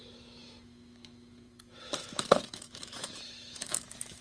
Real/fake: fake